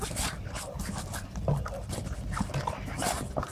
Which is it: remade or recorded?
recorded